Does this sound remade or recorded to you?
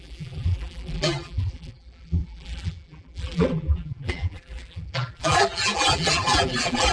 remade